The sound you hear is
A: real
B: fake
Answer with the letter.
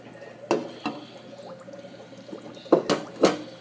A